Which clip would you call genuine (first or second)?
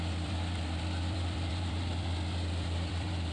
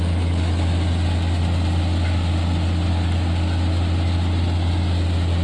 second